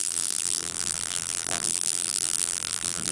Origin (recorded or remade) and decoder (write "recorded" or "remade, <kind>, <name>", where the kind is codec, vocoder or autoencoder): remade, vocoder, BigVGAN v2